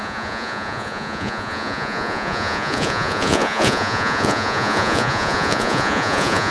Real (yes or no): no